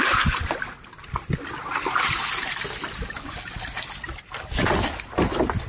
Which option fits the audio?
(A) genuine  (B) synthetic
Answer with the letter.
A